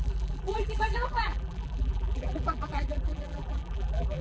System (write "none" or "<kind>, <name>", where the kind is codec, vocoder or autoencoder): vocoder, BigVGAN v2